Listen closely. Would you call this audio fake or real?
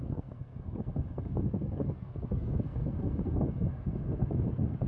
fake